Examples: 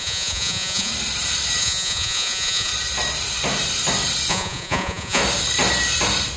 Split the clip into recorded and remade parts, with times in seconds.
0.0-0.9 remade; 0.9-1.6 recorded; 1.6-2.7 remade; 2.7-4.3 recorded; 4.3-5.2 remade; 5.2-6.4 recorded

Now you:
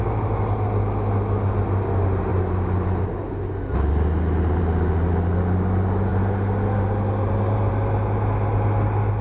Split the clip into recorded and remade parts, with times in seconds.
0.0-6.1 recorded; 6.1-7.7 remade; 7.7-9.2 recorded

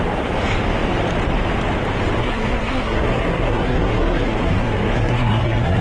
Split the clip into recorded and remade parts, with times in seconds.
0.0-2.2 recorded; 2.2-5.8 remade